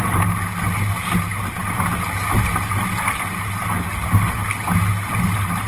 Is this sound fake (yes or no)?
no